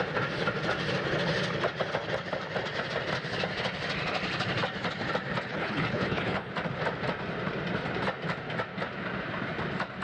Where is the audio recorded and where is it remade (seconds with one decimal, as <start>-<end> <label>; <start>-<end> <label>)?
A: 0.0-5.5 recorded; 5.5-6.5 remade; 6.5-10.0 recorded